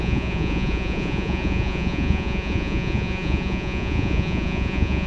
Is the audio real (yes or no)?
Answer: no